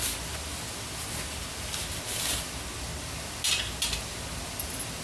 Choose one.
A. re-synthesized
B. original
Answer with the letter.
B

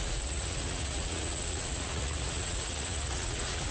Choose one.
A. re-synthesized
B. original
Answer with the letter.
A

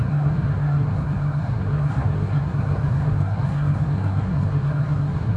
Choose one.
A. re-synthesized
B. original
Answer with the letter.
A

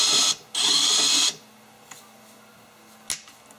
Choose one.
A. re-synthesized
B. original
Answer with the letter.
B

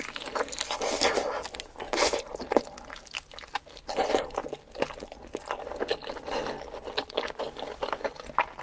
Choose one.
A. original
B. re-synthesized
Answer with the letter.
A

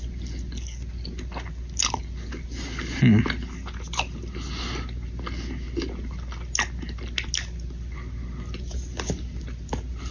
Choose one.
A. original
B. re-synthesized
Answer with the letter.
A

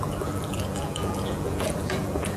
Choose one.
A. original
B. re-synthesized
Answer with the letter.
B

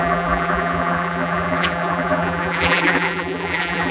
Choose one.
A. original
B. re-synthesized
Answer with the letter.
B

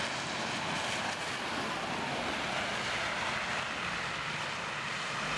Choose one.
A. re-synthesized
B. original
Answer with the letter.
B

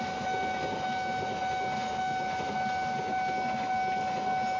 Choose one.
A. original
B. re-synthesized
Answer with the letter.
A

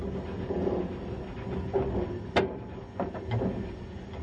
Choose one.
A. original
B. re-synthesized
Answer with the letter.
A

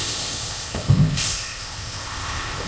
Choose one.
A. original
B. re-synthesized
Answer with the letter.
B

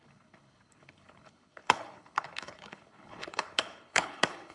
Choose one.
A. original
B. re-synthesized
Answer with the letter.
B